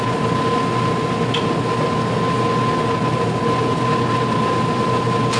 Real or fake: real